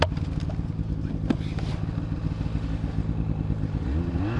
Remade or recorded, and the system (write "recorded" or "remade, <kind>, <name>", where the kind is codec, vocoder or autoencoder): recorded